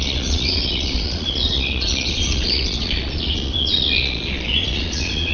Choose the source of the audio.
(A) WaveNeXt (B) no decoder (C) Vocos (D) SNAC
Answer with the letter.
C